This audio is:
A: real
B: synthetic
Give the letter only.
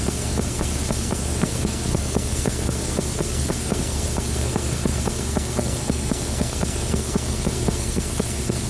B